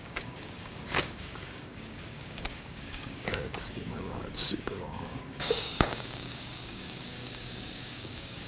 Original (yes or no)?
no